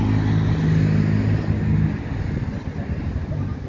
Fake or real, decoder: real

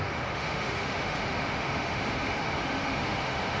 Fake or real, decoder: fake, autoencoder, DAC-VAE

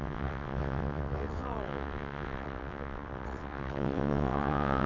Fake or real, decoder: fake, vocoder, WaveNeXt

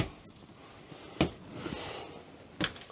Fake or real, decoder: real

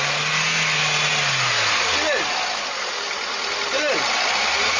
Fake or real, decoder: real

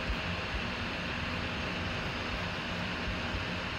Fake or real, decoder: real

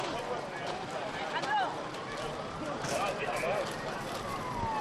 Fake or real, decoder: fake, vocoder, BigVGAN v2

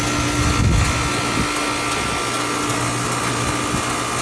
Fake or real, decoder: real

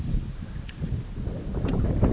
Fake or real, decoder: real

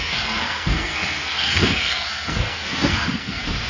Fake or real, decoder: fake, codec, SNAC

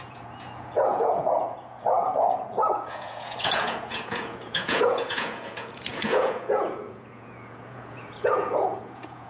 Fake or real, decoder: fake, vocoder, Vocos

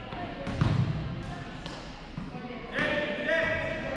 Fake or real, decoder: real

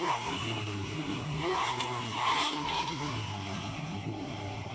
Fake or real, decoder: fake, codec, SNAC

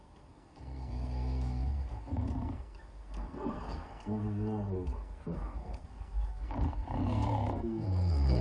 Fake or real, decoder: fake, codec, SNAC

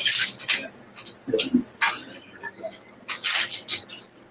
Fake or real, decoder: real